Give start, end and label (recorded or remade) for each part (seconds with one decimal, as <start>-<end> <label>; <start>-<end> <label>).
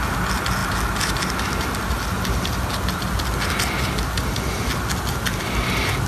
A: 0.0-6.1 recorded